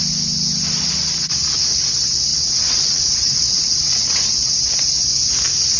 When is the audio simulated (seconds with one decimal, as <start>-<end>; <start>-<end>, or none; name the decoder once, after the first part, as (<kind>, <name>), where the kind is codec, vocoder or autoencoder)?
2.3-4.7 (vocoder, WaveNeXt)